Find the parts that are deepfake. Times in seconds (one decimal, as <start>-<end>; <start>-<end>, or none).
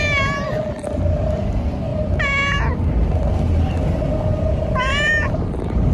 none